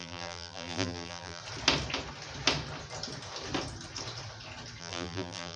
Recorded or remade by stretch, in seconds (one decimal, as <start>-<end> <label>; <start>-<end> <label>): 0.0-1.4 remade; 1.4-4.8 recorded; 4.8-5.6 remade